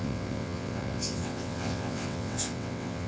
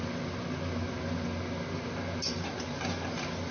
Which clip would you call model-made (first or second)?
first